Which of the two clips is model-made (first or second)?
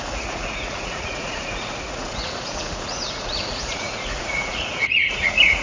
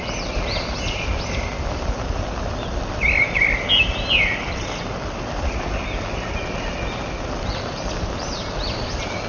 first